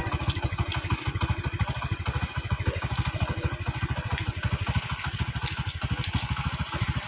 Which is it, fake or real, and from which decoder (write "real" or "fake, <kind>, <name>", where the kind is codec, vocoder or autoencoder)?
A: real